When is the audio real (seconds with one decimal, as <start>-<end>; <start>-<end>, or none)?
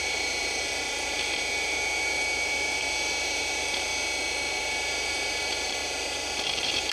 3.9-4.6